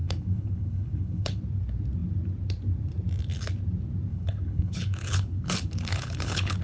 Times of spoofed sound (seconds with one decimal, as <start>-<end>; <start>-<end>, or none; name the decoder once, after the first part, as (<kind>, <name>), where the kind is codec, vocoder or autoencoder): 0.0-1.4 (codec, HILCodec); 4.1-6.6